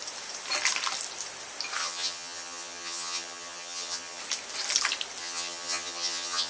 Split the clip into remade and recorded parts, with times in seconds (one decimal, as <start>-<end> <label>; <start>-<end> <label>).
0.0-1.8 recorded; 1.8-4.2 remade; 4.2-5.2 recorded; 5.2-6.5 remade